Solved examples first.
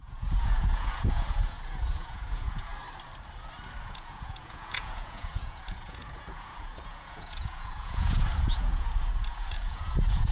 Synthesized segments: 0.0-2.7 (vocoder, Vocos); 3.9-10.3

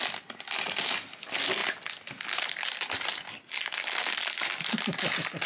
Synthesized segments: none

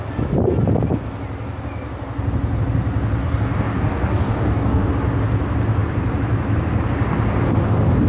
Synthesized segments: 3.2-4.9 (codec, DAC)

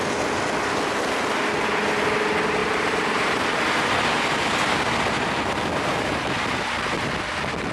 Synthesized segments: 2.6-3.4 (vocoder, BigVGAN v2)

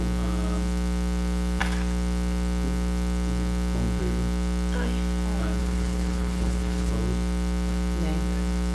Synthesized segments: 5.6-6.9 (codec, HILCodec)

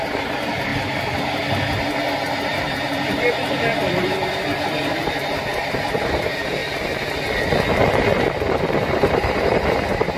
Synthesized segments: 0.0-0.7 (vocoder, BigVGAN v2); 2.3-4.3; 4.8-6.6; 8.3-10.2